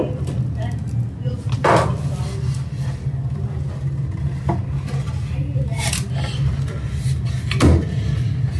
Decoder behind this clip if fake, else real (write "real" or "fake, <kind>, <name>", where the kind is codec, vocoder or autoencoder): real